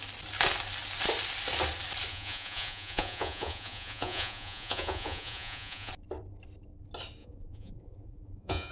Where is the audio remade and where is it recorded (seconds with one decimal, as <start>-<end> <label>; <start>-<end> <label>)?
0.0-2.1 recorded; 2.1-5.9 remade; 5.9-7.2 recorded; 7.2-8.7 remade

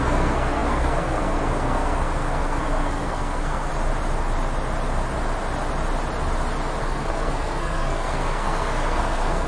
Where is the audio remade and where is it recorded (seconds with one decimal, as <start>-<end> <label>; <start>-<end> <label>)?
0.0-3.7 remade; 3.7-6.8 recorded; 6.8-9.5 remade

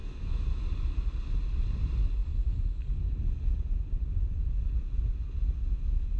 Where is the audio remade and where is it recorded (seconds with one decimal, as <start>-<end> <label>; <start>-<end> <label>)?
0.0-0.6 remade; 0.6-6.2 recorded

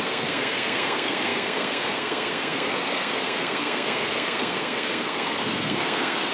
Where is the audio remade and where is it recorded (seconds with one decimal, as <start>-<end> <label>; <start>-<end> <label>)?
0.0-6.3 remade

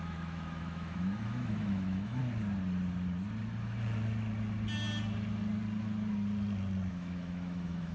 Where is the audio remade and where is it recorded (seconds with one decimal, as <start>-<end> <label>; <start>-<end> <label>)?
0.0-2.2 remade; 2.2-6.9 recorded; 6.9-7.9 remade